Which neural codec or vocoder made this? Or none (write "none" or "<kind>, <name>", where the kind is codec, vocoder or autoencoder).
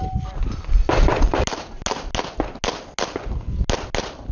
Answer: none